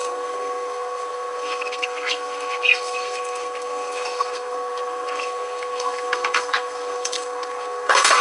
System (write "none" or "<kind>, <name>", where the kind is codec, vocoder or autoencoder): codec, SNAC